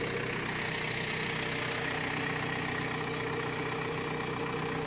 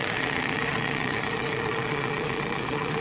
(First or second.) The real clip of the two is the first